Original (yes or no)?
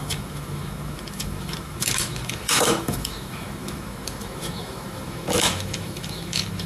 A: no